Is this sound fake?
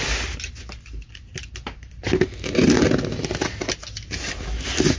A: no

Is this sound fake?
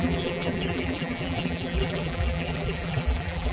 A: yes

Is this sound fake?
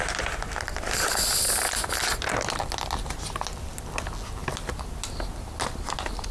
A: no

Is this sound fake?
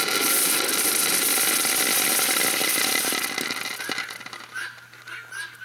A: no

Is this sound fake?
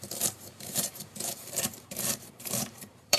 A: yes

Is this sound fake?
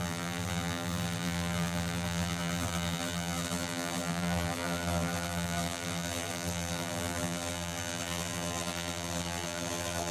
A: yes